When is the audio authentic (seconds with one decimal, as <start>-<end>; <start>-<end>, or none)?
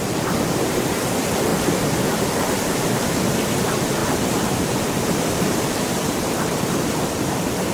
1.5-2.2